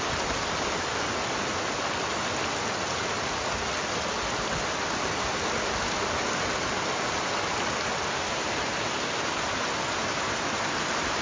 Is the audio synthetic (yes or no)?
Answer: no